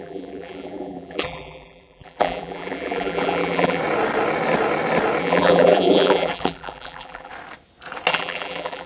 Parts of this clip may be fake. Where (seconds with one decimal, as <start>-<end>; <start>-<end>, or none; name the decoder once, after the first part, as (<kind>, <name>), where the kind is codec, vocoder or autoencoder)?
0.0-3.8 (vocoder, BigVGAN v2); 5.2-7.3; 8.1-8.9